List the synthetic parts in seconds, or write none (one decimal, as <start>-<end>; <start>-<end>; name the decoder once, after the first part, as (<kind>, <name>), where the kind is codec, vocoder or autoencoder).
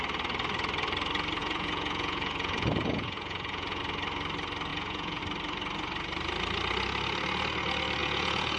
1.4-3.8 (vocoder, Vocos); 4.7-5.2; 8.0-8.6